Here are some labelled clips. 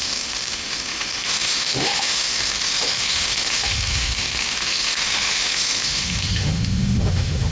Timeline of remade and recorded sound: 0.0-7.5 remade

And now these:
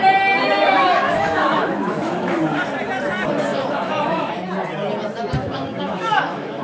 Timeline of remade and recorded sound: 0.0-0.4 recorded; 0.4-2.4 remade; 2.4-3.5 recorded; 3.5-4.3 remade; 4.3-5.4 recorded; 5.4-6.6 remade

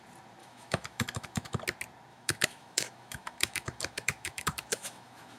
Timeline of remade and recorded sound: 0.0-0.4 recorded; 0.4-1.6 remade; 1.6-2.1 recorded; 2.1-5.4 remade

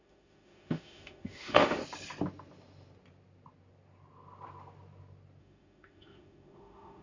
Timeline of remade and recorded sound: 0.0-1.8 remade; 1.8-5.4 recorded; 5.4-7.0 remade